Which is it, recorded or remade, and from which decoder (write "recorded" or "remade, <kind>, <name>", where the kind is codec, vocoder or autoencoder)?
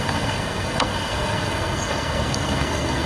remade, codec, SNAC